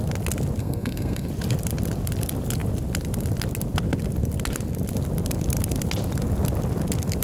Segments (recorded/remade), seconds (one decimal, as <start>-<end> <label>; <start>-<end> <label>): 0.0-0.6 recorded; 0.6-1.3 remade; 1.3-7.2 recorded